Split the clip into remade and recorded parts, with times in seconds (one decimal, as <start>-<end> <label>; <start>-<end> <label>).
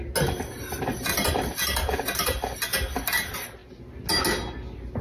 0.0-5.0 recorded